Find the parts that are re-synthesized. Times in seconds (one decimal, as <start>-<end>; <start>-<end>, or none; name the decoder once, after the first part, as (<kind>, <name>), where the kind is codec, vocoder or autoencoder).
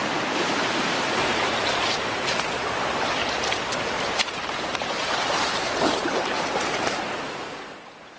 0.0-3.2 (vocoder, BigVGAN v2); 4.1-8.2